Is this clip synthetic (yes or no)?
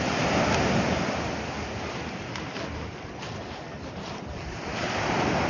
no